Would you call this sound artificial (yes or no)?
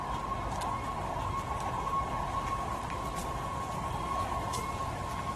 no